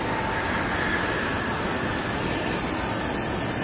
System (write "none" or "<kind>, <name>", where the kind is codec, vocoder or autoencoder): none